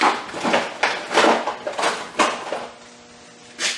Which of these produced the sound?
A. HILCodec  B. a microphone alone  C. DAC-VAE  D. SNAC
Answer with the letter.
B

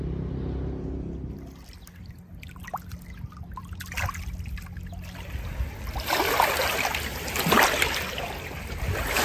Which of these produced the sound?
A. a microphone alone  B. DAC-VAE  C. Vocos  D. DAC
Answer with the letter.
A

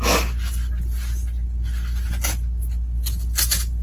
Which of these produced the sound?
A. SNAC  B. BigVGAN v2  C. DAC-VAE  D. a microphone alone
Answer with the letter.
D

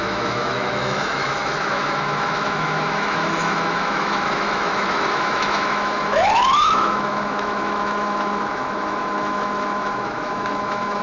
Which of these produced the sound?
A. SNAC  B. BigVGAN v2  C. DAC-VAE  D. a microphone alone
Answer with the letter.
C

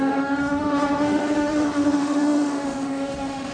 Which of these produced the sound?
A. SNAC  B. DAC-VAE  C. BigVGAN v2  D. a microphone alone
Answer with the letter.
B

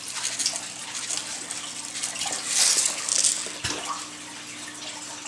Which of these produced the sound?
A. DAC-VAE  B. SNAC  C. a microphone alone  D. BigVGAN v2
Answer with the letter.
C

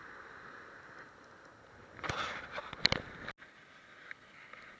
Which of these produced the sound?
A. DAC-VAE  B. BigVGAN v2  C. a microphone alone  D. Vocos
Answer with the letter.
C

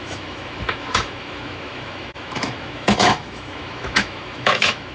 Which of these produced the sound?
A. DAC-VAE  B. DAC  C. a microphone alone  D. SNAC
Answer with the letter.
A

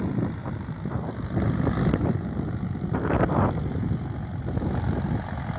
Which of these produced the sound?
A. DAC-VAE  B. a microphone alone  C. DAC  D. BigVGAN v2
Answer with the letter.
B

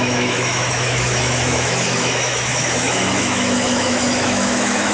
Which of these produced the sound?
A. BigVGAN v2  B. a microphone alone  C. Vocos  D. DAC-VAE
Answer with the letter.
D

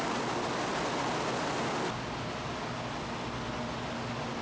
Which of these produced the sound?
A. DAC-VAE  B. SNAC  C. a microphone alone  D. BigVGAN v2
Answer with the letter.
C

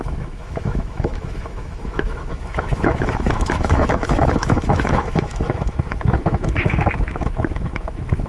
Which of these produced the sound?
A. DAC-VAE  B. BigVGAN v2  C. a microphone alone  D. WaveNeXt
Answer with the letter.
A